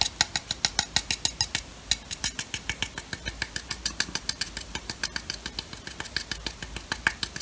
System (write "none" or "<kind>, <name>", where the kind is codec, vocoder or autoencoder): none